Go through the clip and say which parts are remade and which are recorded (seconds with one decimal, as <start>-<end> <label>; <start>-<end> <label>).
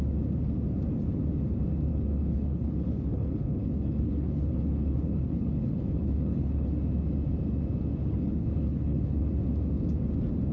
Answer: 0.0-1.9 recorded; 1.9-6.7 remade; 6.7-8.0 recorded; 8.0-9.3 remade; 9.3-10.5 recorded